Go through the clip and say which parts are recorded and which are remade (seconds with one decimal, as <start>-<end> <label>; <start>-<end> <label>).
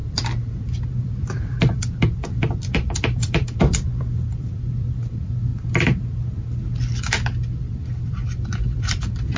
0.0-5.5 remade; 5.5-7.5 recorded; 7.5-9.4 remade